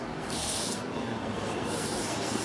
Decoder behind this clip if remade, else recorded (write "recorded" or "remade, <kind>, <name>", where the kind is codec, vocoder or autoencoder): remade, codec, SNAC